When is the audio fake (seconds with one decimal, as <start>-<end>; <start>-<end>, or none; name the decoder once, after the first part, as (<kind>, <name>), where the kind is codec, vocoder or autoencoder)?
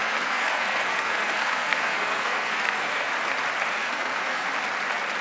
0.0-3.1 (codec, SNAC); 3.7-4.5